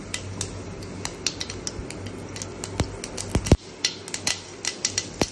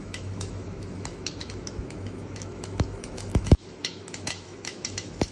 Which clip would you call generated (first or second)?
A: second